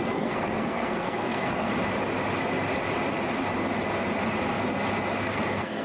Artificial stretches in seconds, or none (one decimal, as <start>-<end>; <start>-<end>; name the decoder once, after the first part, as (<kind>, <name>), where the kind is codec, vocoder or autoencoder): 0.0-1.7 (codec, SNAC); 5.2-5.8